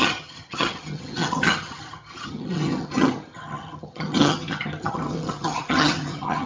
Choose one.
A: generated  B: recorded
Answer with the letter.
A